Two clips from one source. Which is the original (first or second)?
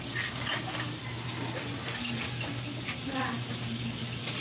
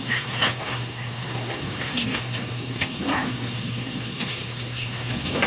first